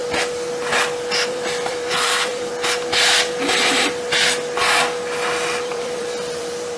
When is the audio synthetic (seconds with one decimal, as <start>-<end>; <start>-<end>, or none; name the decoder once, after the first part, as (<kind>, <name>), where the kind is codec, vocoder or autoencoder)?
1.3-2.5 (vocoder, BigVGAN v2); 5.6-6.8